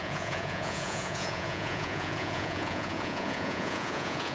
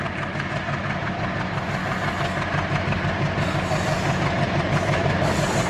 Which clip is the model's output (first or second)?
first